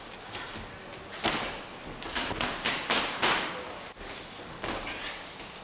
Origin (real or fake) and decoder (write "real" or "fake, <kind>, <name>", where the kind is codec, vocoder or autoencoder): real